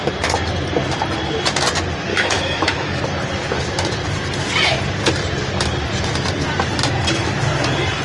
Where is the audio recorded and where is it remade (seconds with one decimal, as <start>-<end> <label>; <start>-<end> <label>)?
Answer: 0.0-2.1 recorded; 2.1-3.0 remade; 3.0-8.0 recorded